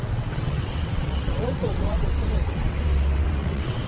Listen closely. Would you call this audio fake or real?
fake